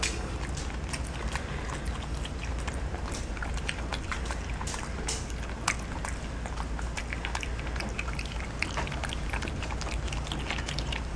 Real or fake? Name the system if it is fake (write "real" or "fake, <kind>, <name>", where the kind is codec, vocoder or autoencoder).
real